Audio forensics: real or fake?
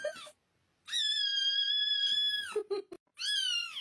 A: real